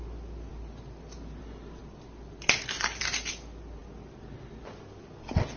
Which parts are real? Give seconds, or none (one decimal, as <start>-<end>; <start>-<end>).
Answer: 0.0-5.6